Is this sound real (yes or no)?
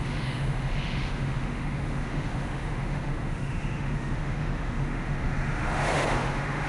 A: no